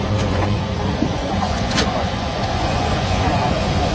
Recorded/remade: remade